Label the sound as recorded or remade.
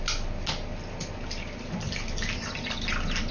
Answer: recorded